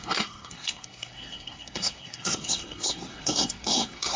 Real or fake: fake